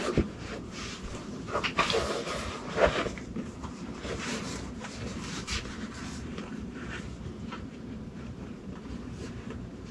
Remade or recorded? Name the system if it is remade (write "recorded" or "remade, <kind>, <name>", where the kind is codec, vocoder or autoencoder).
remade, vocoder, BigVGAN v2